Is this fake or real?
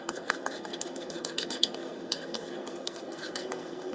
fake